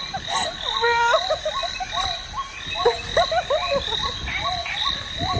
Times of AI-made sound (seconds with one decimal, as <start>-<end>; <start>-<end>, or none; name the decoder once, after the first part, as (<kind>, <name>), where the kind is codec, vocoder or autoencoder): none